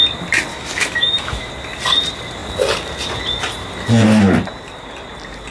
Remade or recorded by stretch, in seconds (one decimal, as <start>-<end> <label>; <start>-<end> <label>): 0.0-0.5 recorded; 0.5-1.5 remade; 1.5-5.5 recorded